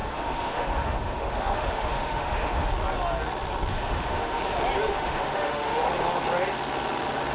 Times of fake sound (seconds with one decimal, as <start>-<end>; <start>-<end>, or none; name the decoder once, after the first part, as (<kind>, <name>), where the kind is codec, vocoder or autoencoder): 0.0-2.7 (autoencoder, DAC-VAE); 3.7-4.4; 4.9-5.9